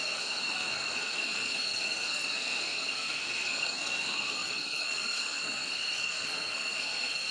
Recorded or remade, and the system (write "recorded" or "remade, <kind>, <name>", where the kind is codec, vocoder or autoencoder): remade, codec, SNAC